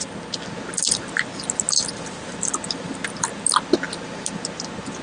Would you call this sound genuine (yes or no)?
yes